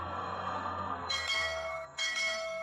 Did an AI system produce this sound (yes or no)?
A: yes